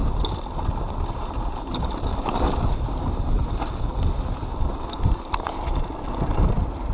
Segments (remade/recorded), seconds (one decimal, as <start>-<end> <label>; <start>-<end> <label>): 0.0-6.9 recorded